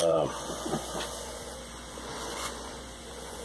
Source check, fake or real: fake